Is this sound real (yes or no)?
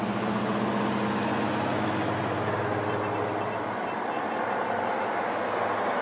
yes